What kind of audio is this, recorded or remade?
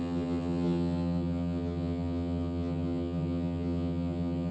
remade